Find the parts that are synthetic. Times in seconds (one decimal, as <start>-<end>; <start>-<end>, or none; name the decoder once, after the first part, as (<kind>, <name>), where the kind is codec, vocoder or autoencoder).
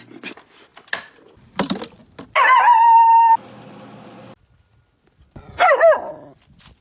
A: none